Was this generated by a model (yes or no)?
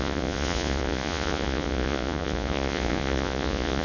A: yes